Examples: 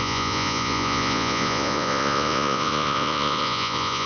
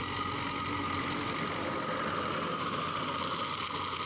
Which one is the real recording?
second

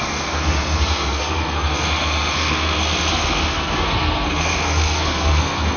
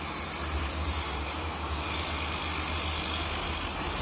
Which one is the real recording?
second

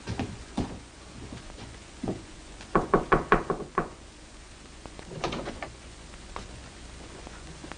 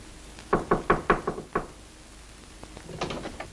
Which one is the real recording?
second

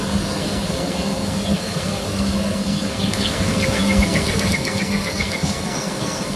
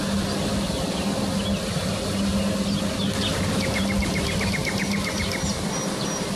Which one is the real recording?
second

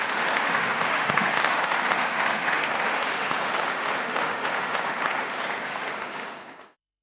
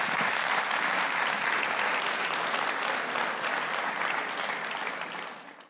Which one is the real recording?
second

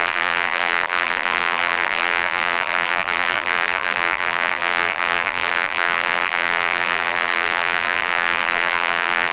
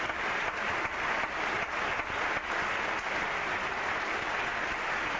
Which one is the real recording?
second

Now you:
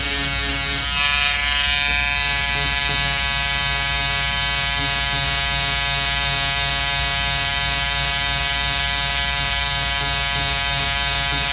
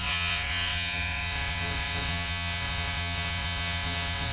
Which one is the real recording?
first